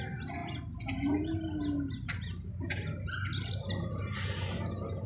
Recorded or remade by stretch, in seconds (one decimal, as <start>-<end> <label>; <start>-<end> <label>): 0.0-5.1 recorded